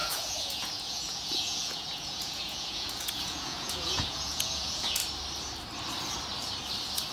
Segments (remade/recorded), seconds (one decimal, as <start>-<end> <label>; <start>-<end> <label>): 0.0-5.0 remade; 5.0-7.1 recorded